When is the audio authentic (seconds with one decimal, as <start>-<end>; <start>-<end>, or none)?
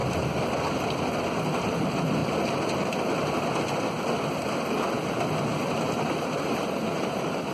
0.0-1.6; 2.2-6.0